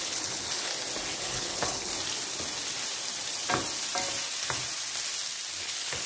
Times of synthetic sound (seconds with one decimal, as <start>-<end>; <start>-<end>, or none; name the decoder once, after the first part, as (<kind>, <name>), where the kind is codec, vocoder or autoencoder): 0.0-0.7 (codec, HILCodec); 1.2-1.9; 5.6-6.1